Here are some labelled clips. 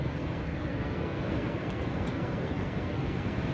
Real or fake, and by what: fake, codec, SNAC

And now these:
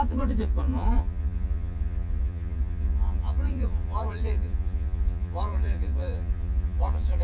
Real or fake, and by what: fake, vocoder, Vocos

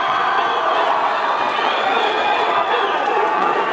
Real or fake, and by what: fake, vocoder, WaveNeXt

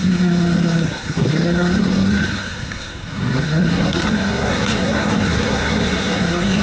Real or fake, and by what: fake, codec, SNAC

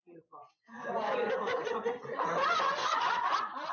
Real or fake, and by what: fake, vocoder, Vocos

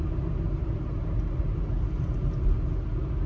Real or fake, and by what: real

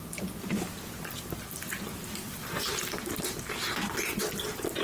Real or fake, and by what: real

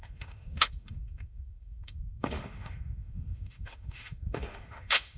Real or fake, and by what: fake, autoencoder, DAC-VAE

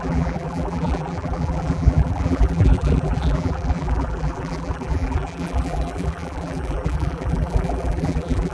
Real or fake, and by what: fake, vocoder, BigVGAN v2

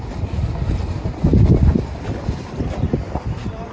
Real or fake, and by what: real